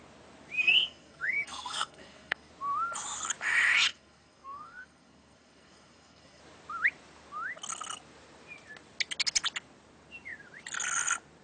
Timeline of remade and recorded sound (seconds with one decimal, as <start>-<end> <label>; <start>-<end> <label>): 0.0-0.6 recorded; 0.6-2.5 remade; 2.5-3.9 recorded; 3.9-6.4 remade; 6.4-11.4 recorded